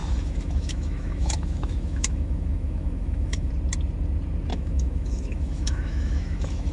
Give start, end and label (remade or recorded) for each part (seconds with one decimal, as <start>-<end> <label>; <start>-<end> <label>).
0.0-3.5 remade; 3.5-4.5 recorded; 4.5-6.7 remade